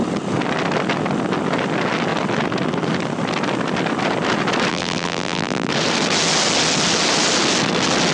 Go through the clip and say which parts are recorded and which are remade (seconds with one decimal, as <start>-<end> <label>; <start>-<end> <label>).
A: 0.0-4.7 recorded; 4.7-5.7 remade; 5.7-8.1 recorded